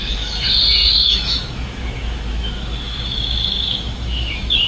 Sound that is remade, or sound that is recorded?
remade